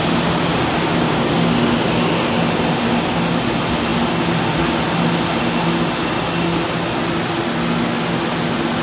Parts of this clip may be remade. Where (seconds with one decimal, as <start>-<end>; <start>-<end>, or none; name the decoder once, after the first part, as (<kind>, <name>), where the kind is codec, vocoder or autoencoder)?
none